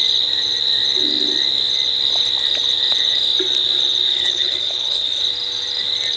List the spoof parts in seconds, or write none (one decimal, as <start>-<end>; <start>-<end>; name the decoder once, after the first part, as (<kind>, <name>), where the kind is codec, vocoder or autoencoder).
4.1-5.2 (codec, HILCodec)